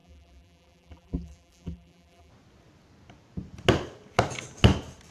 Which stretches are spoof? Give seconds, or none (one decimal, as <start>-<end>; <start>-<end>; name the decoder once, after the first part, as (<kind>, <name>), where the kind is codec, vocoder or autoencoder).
0.0-2.3 (vocoder, BigVGAN v2)

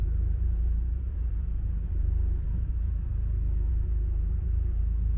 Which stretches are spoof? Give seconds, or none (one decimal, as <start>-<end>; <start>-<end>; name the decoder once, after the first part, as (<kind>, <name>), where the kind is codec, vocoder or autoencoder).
0.0-3.1 (vocoder, BigVGAN v2); 3.7-4.8